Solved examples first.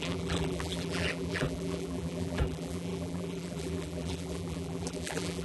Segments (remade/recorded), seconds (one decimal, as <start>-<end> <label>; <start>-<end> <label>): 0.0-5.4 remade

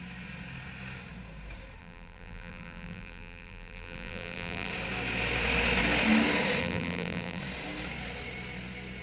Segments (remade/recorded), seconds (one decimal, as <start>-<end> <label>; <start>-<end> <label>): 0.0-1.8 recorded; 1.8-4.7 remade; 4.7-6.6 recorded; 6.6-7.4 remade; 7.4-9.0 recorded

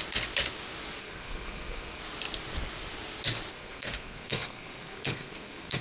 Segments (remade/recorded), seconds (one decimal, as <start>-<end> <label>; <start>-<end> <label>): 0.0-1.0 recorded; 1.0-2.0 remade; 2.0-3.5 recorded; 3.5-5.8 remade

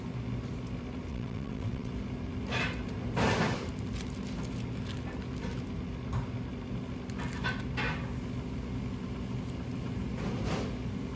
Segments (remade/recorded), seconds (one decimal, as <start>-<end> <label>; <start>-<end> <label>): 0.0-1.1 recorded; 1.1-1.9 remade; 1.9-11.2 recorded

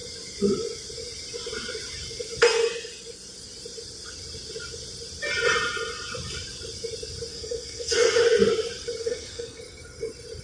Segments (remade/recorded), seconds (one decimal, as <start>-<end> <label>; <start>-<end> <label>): 0.0-7.3 recorded; 7.3-8.2 remade; 8.2-9.0 recorded; 9.0-9.6 remade; 9.6-10.4 recorded

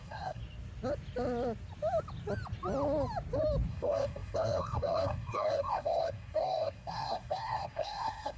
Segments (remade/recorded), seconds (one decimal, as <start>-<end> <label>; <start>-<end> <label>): 0.0-0.4 remade; 0.4-3.7 recorded; 3.7-8.4 remade